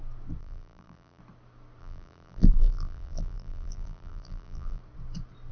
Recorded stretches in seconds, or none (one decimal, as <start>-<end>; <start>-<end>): 0.0-0.4; 1.2-1.8; 4.8-5.5